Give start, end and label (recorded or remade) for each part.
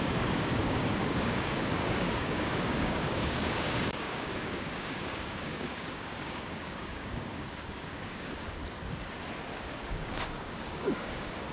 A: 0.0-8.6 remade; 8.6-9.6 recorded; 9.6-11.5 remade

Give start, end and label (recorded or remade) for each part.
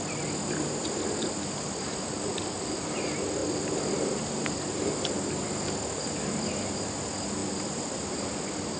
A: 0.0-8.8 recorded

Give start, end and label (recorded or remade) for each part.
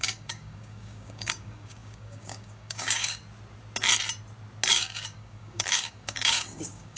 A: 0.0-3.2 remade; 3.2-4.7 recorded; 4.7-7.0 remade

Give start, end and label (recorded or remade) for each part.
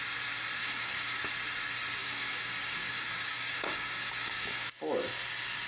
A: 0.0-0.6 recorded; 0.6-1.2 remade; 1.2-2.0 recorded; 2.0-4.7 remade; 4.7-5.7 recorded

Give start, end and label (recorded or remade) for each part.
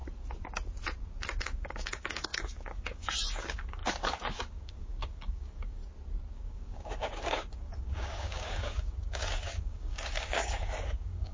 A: 0.0-1.4 recorded; 1.4-5.8 remade; 5.8-6.3 recorded; 6.3-11.3 remade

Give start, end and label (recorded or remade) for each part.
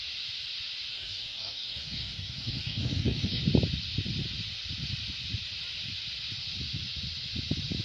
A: 0.0-0.9 recorded; 0.9-3.4 remade; 3.4-7.8 recorded